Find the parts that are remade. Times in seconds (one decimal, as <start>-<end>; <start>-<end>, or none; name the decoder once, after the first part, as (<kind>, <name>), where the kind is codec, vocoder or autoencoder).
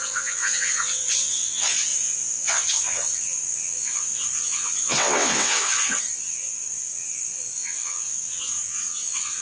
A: 0.0-9.4 (vocoder, WaveNeXt)